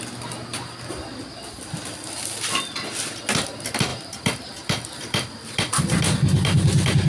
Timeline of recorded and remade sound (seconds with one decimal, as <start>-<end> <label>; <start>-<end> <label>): 0.0-0.5 recorded; 0.5-2.8 remade; 2.8-3.9 recorded; 3.9-6.0 remade; 6.0-7.1 recorded